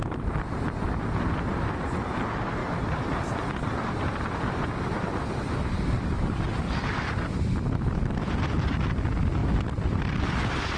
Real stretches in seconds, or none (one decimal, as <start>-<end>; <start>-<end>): 0.0-2.6; 7.4-9.4; 10.2-10.8